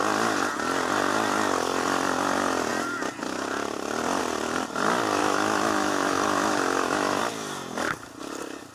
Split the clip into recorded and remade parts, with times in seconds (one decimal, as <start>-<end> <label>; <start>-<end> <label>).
0.0-5.2 recorded; 5.2-7.2 remade; 7.2-8.7 recorded